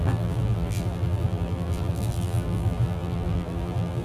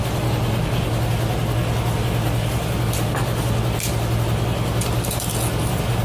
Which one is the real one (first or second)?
second